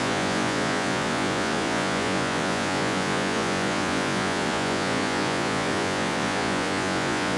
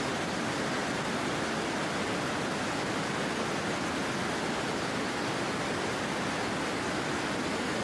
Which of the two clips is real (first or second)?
second